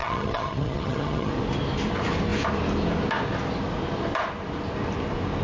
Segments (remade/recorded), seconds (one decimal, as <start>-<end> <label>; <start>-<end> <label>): 0.0-1.3 remade; 1.3-5.4 recorded